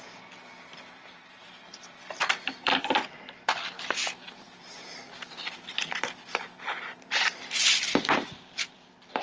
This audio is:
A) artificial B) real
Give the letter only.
A